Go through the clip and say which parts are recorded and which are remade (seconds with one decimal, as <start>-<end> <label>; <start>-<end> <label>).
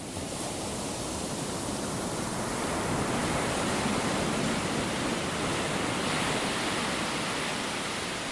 0.0-8.3 recorded